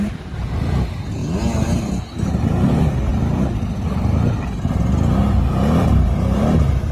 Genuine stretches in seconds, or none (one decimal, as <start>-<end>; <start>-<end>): 1.2-2.3; 3.1-5.8